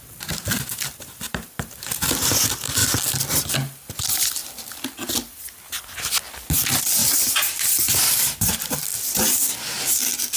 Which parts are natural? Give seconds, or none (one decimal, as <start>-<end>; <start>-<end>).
0.0-0.7; 1.5-2.8; 3.5-4.4; 5.0-7.0; 8.1-10.4